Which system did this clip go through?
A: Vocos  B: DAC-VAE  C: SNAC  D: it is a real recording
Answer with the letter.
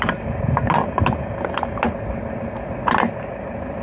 D